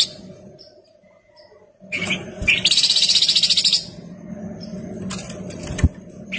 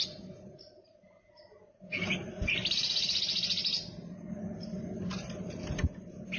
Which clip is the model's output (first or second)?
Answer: second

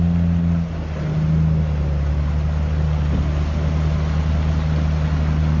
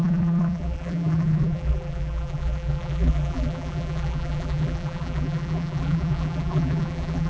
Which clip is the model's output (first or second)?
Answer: second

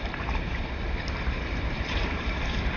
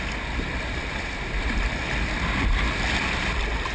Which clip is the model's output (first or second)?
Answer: first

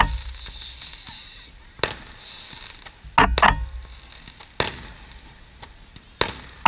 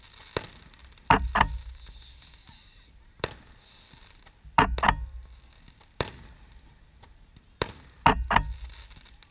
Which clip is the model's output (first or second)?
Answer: second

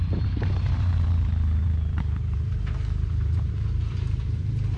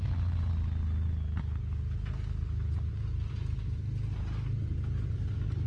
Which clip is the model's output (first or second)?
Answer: first